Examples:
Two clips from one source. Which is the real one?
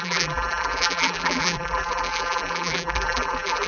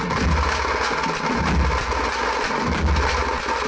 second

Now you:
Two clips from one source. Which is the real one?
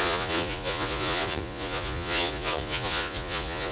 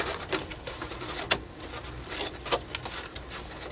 second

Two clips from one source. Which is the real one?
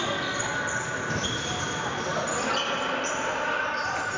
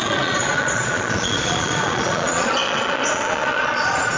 first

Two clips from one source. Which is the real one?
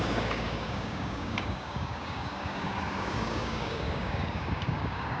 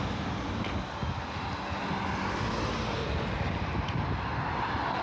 second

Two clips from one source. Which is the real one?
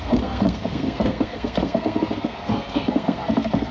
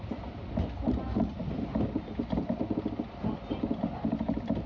second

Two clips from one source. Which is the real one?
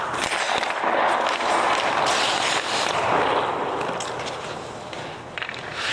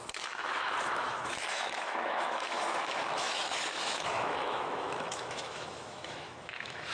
first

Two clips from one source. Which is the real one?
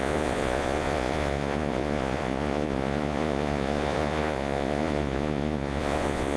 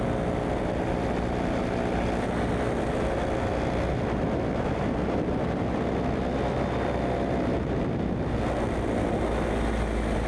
second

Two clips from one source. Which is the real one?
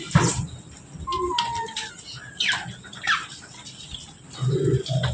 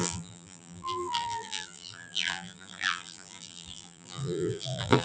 first